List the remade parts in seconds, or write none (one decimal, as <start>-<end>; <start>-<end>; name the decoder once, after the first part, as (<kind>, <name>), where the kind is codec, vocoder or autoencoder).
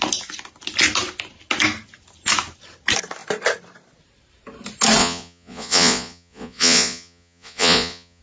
5.0-8.2 (vocoder, Vocos)